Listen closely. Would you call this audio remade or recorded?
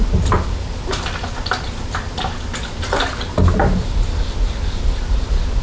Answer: recorded